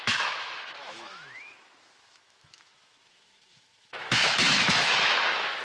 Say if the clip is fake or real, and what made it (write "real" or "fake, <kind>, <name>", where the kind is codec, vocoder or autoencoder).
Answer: fake, autoencoder, DAC-VAE